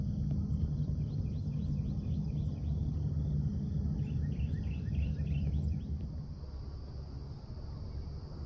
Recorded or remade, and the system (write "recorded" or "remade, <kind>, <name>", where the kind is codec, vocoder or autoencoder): recorded